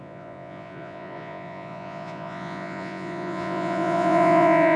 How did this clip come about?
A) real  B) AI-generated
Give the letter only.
B